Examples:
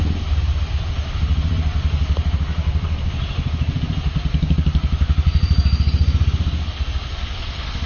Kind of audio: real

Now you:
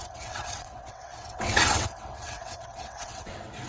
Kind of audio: fake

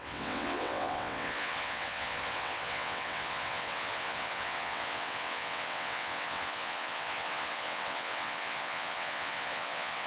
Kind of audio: fake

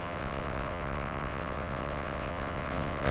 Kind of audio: fake